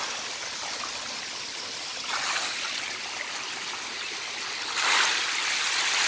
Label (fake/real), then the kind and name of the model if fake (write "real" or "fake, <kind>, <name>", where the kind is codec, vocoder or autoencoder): real